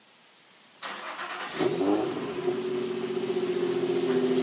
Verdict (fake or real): real